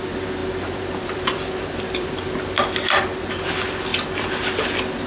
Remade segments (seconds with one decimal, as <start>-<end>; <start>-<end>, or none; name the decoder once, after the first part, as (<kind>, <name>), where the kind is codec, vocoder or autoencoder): 0.4-3.5 (vocoder, BigVGAN v2)